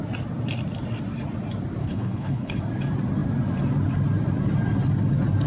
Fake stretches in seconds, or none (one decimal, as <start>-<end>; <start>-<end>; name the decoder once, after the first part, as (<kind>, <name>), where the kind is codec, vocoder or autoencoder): 1.8-2.6 (codec, HILCodec)